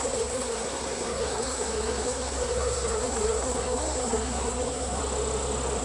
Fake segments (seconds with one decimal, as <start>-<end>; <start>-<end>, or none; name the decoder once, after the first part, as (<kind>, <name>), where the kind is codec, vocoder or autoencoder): 0.0-5.0 (codec, SNAC)